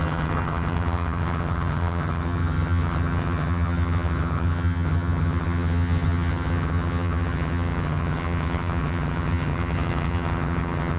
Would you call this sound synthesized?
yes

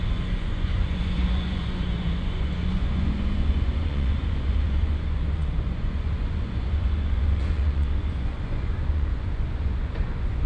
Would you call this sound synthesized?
yes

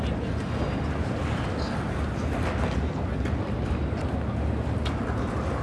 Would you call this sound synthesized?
no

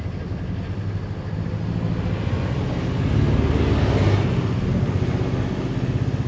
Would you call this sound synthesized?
no